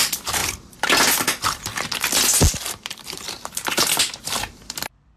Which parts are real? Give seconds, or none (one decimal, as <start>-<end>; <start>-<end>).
0.4-2.8